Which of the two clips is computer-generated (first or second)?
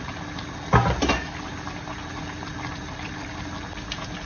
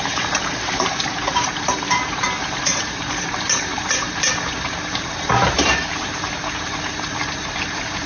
second